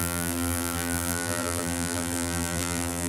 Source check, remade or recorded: remade